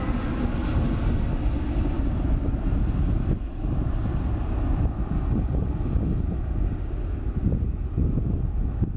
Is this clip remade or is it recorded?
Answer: recorded